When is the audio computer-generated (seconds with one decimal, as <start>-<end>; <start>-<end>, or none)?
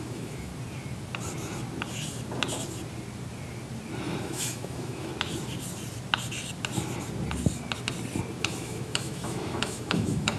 0.0-0.5; 4.2-5.1; 8.4-10.4